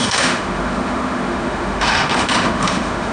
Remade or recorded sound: remade